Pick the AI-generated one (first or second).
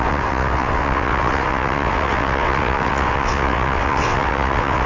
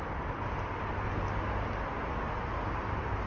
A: first